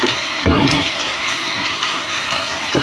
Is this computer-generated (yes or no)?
yes